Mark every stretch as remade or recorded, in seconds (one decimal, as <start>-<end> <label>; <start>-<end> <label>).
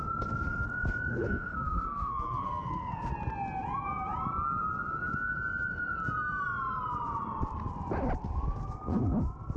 0.0-1.1 recorded; 1.1-3.1 remade; 3.1-9.6 recorded